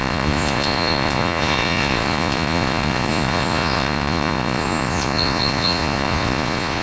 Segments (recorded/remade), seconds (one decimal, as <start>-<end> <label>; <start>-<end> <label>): 0.0-6.8 remade